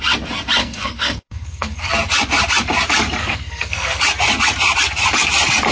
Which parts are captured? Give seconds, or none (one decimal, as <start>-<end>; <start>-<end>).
0.0-0.6; 1.9-3.2; 4.0-5.7